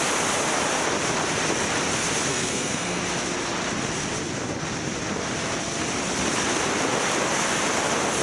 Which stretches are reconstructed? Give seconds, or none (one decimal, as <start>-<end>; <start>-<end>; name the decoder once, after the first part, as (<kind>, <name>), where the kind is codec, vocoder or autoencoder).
2.3-3.0 (codec, SNAC)

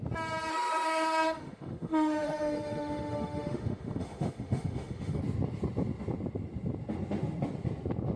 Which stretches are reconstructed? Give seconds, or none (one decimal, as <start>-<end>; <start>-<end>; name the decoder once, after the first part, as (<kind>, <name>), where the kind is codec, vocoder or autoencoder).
0.5-5.2 (autoencoder, DAC-VAE)

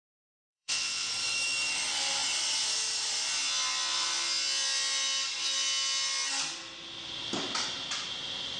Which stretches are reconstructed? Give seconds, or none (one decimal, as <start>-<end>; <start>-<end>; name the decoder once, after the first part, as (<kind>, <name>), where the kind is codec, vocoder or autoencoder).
0.5-1.1 (vocoder, WaveNeXt)

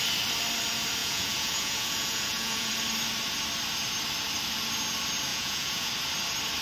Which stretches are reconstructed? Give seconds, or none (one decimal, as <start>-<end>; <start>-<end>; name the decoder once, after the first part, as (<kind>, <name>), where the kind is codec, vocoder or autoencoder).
1.0-2.7 (vocoder, Vocos); 5.3-5.9

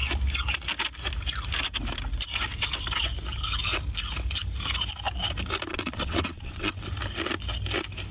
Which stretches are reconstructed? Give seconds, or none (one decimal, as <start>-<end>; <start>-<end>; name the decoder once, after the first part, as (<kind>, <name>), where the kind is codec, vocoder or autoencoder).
5.7-6.8 (vocoder, WaveNeXt)